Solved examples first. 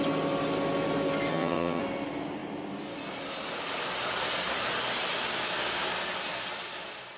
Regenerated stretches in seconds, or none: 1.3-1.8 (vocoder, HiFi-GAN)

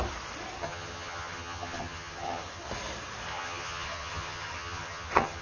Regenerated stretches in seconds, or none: 0.6-2.6 (vocoder, HiFi-GAN); 3.3-5.4

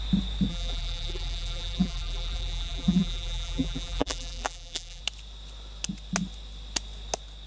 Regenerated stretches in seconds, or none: 0.5-5.0 (vocoder, BigVGAN v2)